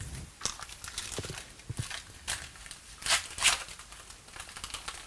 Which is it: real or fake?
real